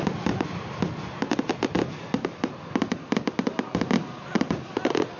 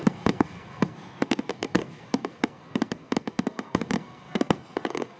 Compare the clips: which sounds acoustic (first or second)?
first